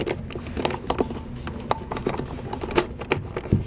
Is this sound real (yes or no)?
yes